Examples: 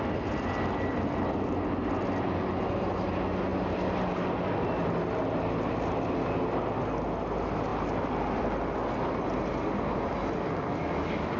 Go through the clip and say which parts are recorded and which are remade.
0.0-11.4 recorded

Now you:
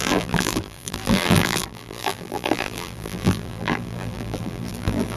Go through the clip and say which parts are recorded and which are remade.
0.0-5.2 remade

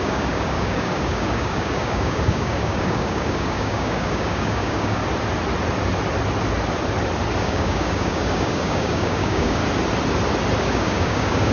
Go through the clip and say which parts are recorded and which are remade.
0.0-5.0 remade; 5.0-7.4 recorded; 7.4-9.6 remade; 9.6-10.6 recorded; 10.6-11.5 remade

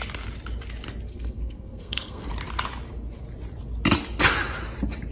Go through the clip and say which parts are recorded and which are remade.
0.0-1.1 recorded; 1.1-2.3 remade; 2.3-5.1 recorded